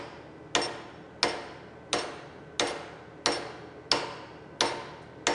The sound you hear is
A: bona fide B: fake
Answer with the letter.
A